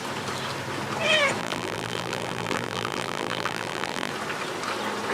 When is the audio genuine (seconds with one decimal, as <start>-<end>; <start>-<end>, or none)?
0.0-1.4; 4.1-5.1